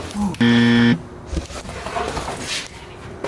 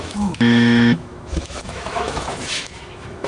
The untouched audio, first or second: first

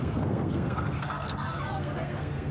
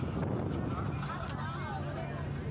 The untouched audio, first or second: second